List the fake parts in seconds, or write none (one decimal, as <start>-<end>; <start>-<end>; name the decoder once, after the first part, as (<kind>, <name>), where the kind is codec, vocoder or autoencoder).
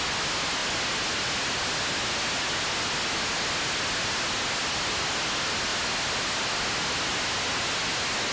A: none